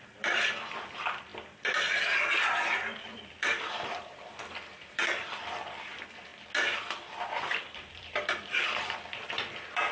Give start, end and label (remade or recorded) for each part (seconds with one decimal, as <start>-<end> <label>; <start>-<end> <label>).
0.0-6.3 remade; 6.3-7.4 recorded; 7.4-9.9 remade